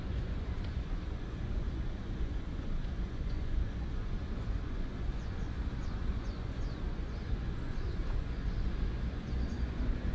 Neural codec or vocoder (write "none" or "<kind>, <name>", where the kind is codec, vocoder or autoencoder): vocoder, Vocos